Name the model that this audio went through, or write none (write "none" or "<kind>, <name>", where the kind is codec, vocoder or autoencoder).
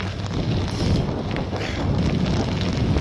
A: none